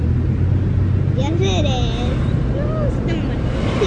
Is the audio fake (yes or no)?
no